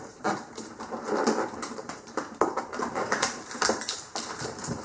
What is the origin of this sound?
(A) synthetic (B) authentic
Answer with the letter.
A